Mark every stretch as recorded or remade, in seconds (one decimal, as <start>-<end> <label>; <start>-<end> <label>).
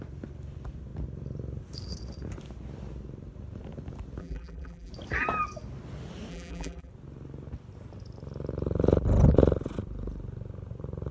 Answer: 0.0-4.2 recorded; 4.2-4.9 remade; 4.9-6.3 recorded; 6.3-6.9 remade; 6.9-11.1 recorded